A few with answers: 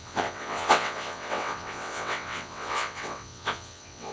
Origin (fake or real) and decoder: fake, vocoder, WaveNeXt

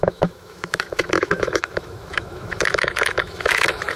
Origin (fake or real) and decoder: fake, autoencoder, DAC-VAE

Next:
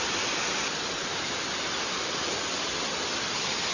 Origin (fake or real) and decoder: real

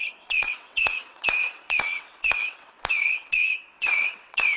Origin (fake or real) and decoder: fake, vocoder, WaveNeXt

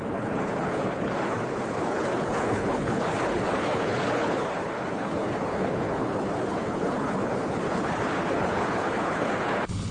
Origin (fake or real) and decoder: fake, codec, HILCodec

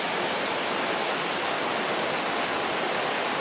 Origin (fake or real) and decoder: real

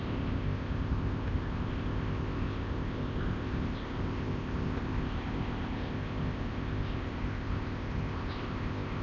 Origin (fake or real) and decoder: fake, codec, ZipCodec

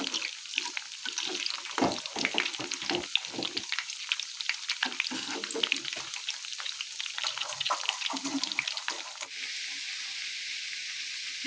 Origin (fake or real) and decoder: real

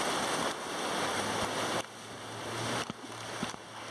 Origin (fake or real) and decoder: real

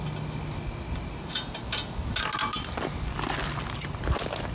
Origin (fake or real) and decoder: real